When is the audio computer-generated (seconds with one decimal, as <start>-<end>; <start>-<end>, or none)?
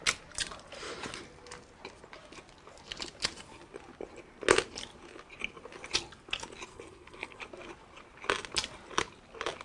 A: 6.7-7.4